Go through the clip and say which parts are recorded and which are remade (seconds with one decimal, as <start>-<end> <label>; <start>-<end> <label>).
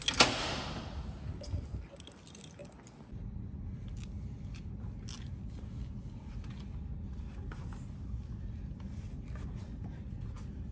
0.0-10.7 recorded